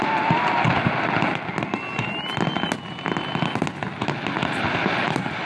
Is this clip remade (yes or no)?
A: no